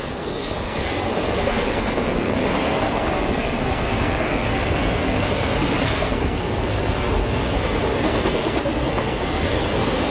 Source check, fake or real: fake